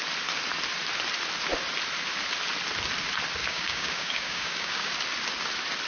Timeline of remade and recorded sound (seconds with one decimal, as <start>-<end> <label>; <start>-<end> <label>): 0.0-3.4 recorded; 3.4-4.9 remade; 4.9-5.9 recorded